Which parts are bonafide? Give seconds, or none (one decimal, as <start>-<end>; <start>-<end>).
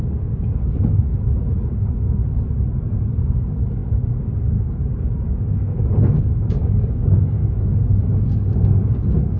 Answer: 1.1-1.8; 2.2-3.0